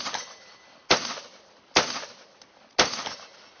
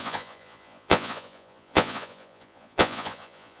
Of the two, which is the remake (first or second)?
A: second